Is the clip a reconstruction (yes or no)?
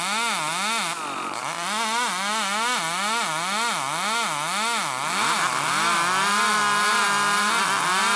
no